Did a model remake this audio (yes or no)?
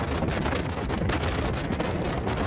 no